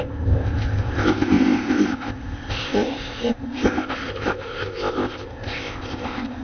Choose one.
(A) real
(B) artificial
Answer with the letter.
B